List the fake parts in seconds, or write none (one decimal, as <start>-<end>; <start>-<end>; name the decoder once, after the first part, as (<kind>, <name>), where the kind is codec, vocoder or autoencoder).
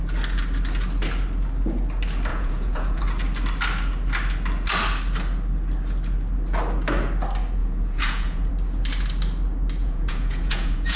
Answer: 2.3-3.0 (vocoder, Vocos); 7.6-8.5; 9.8-11.0